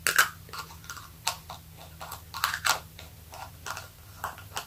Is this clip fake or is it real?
real